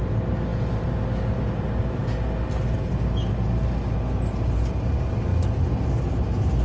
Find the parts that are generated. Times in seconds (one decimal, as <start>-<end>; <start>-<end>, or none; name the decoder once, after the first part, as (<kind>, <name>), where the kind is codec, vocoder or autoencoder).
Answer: none

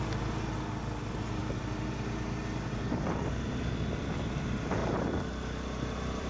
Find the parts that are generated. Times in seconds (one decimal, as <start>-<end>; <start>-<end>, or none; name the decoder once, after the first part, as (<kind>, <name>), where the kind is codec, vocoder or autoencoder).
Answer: 1.4-3.3 (vocoder, BigVGAN v2); 4.8-6.3

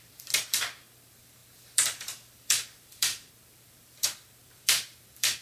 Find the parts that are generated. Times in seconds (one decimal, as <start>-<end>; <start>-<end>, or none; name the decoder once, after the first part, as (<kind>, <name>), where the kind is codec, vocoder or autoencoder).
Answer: 0.0-5.4 (vocoder, BigVGAN v2)

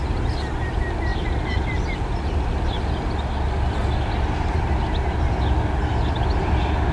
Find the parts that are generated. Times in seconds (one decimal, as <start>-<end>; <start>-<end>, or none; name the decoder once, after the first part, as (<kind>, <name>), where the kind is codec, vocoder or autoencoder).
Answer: none